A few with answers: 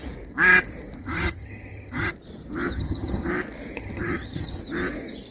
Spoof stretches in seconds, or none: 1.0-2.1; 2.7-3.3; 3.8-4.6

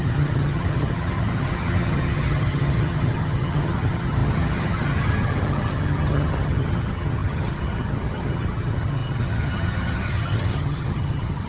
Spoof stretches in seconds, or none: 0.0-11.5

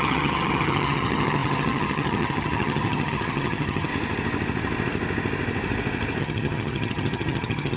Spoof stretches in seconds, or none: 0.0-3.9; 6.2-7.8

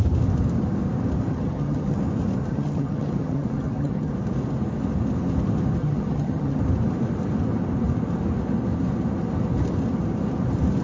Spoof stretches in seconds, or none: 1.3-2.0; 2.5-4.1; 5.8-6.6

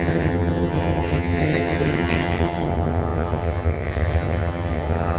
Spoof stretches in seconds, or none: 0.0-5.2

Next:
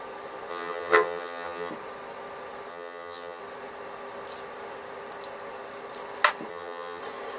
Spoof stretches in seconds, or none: 0.5-1.7; 2.7-3.4; 6.5-7.0